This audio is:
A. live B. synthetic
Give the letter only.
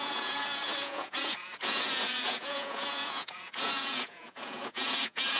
B